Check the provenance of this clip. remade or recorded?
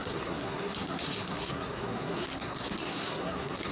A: remade